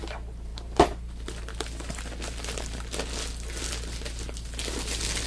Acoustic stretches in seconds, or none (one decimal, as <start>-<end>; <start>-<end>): 0.0-5.3